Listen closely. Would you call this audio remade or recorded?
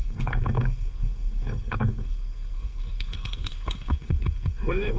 remade